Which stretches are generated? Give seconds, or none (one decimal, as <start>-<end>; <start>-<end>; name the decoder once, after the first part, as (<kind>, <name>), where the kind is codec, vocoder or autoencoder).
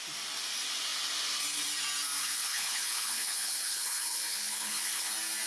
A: 2.2-5.1 (codec, HILCodec)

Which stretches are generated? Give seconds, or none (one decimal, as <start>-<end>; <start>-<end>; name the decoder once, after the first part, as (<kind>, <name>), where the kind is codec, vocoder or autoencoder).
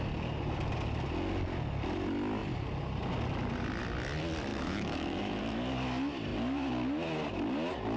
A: 4.5-5.4 (autoencoder, DAC-VAE)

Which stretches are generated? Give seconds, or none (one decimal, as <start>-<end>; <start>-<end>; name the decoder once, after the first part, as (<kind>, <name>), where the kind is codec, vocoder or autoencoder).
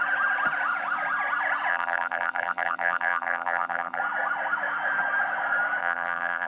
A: 1.7-4.0 (vocoder, BigVGAN v2); 5.8-6.5